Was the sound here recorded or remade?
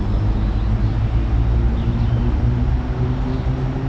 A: recorded